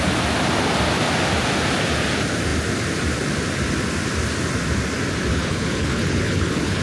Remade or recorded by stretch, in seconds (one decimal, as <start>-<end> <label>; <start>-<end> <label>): 0.0-5.3 recorded; 5.3-6.8 remade